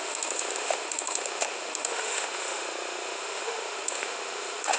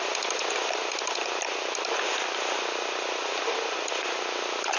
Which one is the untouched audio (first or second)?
second